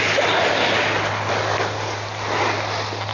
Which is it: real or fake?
real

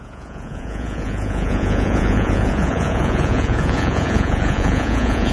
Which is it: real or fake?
fake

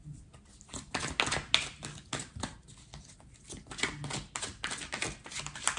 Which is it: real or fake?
real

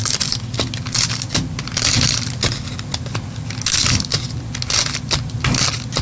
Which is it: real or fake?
real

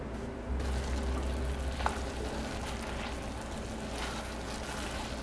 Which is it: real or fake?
real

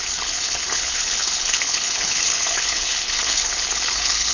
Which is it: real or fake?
fake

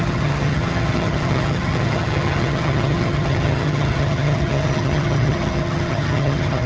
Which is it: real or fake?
fake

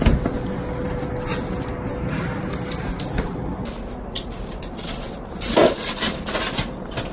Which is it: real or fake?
real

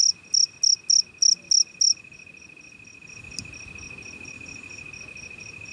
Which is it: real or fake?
real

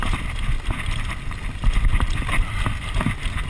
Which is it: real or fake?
real